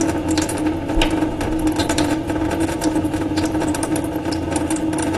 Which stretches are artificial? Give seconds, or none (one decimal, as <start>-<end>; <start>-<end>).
1.8-3.7